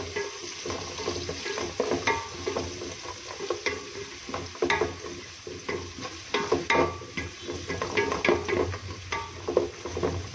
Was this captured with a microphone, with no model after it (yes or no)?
yes